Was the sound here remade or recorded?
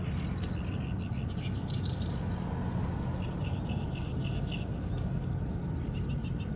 recorded